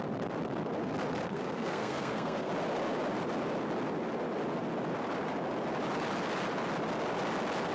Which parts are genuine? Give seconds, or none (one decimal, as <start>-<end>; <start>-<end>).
0.0-1.2; 2.5-7.7